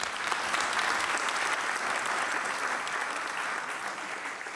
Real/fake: real